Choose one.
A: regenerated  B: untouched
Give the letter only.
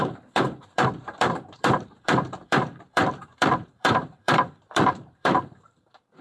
A